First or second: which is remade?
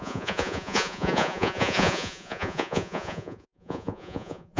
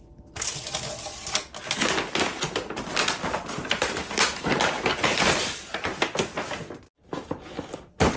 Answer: first